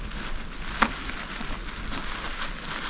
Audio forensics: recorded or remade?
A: recorded